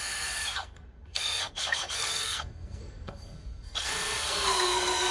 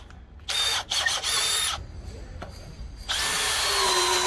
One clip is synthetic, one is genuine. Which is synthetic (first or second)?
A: first